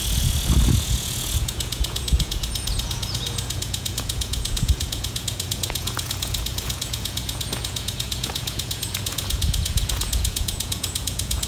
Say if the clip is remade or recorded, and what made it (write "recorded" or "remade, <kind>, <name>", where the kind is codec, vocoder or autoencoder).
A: remade, vocoder, Vocos